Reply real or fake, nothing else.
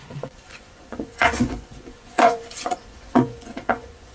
fake